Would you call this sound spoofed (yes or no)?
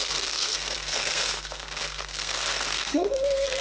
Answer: yes